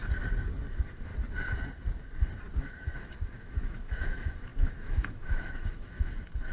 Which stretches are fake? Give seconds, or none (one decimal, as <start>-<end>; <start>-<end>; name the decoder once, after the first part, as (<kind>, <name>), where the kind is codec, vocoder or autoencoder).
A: 0.7-1.1 (autoencoder, DAC-VAE); 2.6-6.5